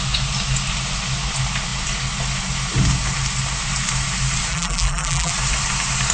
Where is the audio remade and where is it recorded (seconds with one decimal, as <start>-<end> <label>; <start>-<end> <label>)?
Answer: 0.0-4.5 recorded; 4.5-5.3 remade; 5.3-6.1 recorded